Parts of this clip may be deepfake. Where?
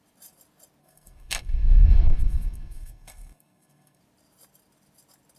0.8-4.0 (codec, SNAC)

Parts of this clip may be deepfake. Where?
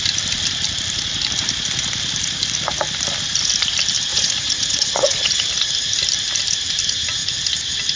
4.1-5.5 (vocoder, Vocos)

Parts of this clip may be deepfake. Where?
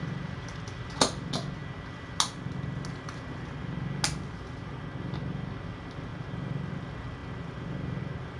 none